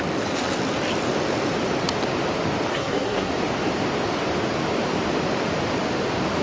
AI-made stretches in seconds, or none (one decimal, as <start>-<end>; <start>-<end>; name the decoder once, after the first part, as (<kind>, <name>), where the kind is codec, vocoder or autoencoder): 2.7-3.3 (codec, SNAC)

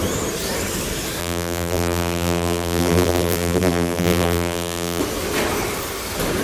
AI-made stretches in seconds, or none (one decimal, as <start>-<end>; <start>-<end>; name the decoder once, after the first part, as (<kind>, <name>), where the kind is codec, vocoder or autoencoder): 1.2-5.0 (vocoder, BigVGAN v2)